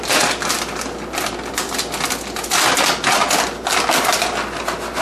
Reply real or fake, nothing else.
real